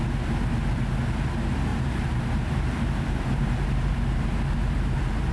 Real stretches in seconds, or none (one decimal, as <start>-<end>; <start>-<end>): 0.0-1.7